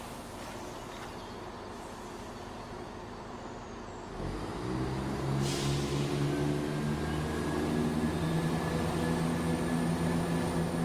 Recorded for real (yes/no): yes